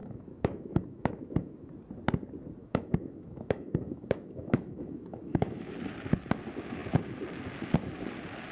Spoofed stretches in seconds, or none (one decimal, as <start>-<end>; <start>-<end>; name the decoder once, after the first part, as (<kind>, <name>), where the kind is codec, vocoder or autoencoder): 0.0-1.7 (autoencoder, DAC-VAE); 2.6-5.7